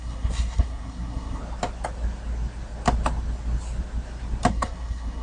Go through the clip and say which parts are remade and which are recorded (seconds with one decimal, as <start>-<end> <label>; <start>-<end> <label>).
0.0-1.4 remade; 1.4-4.5 recorded; 4.5-5.2 remade